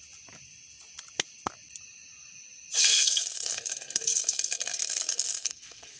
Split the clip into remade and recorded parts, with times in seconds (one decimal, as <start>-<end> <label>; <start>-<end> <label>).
0.0-2.8 recorded; 2.8-6.0 remade